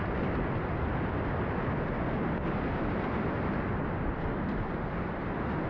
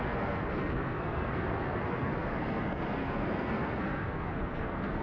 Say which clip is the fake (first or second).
second